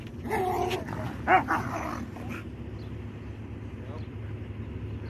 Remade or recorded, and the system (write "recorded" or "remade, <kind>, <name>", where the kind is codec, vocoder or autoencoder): recorded